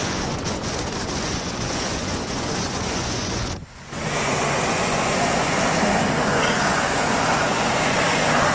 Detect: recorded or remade remade